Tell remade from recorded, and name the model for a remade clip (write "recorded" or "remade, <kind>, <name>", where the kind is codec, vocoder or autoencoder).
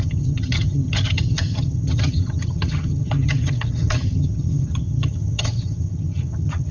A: remade, vocoder, HiFi-GAN